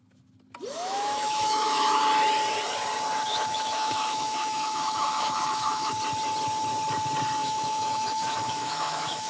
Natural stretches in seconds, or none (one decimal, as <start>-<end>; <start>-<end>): 0.0-0.7; 2.0-3.3; 5.9-7.4